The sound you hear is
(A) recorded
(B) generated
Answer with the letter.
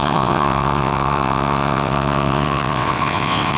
B